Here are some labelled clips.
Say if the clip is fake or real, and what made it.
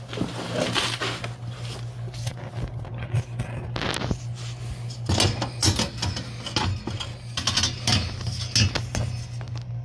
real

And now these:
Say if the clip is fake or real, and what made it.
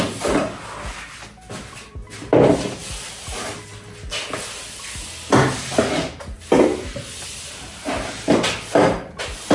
real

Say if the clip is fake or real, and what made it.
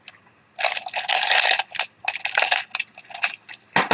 real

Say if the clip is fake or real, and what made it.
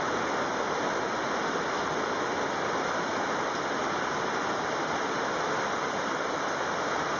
real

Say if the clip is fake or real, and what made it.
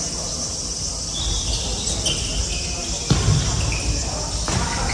real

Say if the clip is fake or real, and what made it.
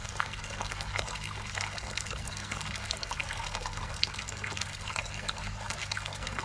fake, codec, SNAC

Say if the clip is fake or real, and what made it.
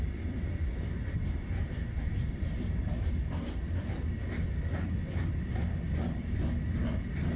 real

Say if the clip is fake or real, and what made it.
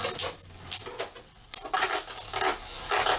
real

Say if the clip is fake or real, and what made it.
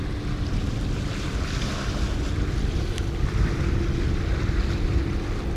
real